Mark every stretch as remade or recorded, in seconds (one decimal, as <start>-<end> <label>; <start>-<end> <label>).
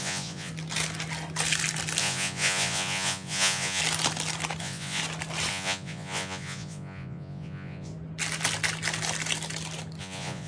0.0-0.5 remade; 0.5-2.0 recorded; 2.0-3.8 remade; 3.8-4.6 recorded; 4.6-5.0 remade; 5.0-5.5 recorded; 5.5-7.9 remade; 7.9-10.0 recorded; 10.0-10.5 remade